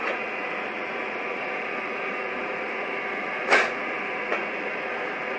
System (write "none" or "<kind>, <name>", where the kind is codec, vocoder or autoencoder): vocoder, Vocos